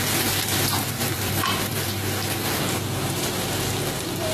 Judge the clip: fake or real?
fake